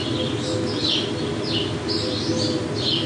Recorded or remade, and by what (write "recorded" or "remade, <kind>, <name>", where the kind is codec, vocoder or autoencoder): recorded